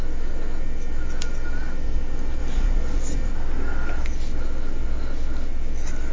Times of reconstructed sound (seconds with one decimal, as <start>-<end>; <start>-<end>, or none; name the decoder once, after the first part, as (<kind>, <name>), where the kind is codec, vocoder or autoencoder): 2.4-3.3 (vocoder, BigVGAN v2)